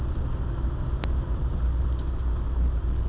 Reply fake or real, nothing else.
real